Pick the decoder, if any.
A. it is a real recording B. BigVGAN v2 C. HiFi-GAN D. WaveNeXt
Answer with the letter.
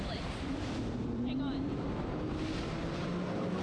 B